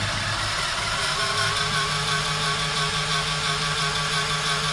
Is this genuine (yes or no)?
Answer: yes